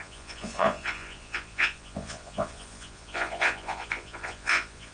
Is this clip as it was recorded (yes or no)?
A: no